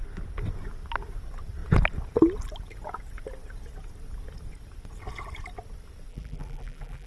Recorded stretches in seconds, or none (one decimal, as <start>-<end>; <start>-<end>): 0.0-6.1